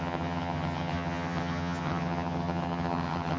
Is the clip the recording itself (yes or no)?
no